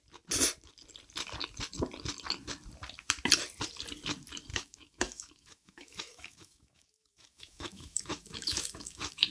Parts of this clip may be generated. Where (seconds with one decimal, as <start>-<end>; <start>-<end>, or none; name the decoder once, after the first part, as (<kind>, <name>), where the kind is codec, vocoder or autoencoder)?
4.5-9.3 (autoencoder, DAC-VAE)